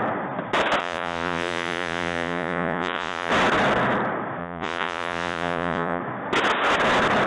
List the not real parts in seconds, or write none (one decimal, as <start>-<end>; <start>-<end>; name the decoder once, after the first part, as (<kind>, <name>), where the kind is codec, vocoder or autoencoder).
0.8-3.3 (vocoder, Vocos); 4.4-6.0